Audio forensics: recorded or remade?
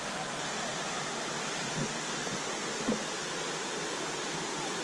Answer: recorded